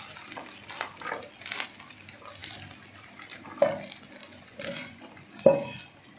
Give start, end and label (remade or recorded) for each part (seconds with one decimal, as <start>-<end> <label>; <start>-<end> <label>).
0.0-4.2 recorded; 4.2-5.8 remade; 5.8-6.2 recorded